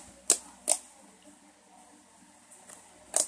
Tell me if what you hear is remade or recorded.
recorded